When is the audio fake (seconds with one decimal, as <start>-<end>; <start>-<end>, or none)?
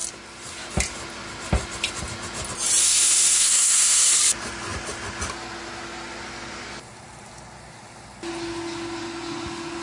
2.8-4.1